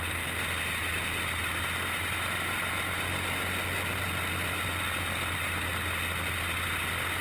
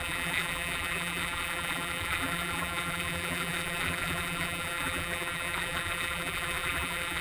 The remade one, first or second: second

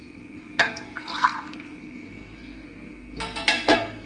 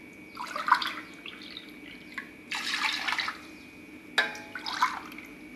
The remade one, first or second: first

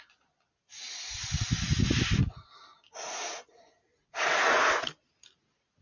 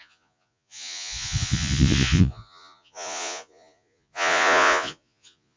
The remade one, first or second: second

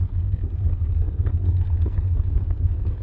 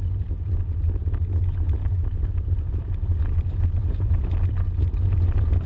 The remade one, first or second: first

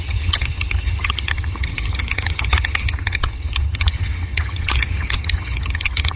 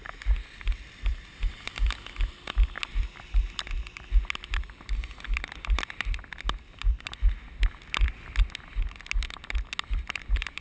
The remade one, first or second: first